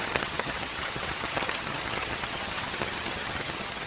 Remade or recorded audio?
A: remade